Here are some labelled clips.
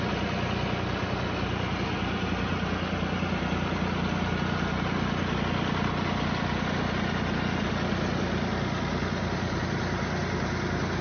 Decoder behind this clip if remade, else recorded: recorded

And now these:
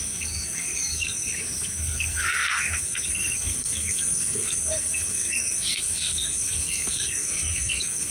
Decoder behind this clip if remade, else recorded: remade, codec, SNAC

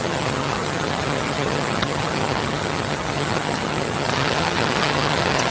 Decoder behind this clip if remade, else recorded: remade, vocoder, HiFi-GAN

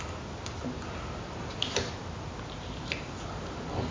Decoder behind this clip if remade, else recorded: recorded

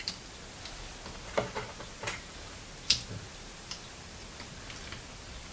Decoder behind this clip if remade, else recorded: recorded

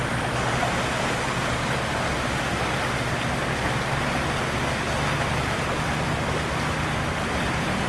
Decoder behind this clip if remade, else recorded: recorded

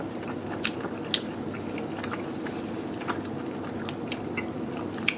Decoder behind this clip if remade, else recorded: recorded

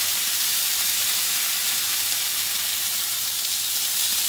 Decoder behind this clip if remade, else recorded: remade, vocoder, BigVGAN v2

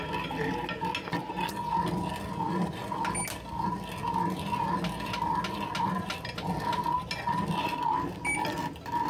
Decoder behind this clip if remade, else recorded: recorded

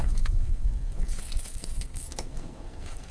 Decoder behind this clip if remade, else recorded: remade, codec, SNAC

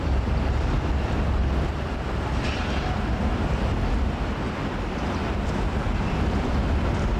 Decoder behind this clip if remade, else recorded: remade, vocoder, BigVGAN v2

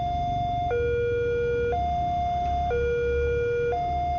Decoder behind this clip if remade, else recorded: recorded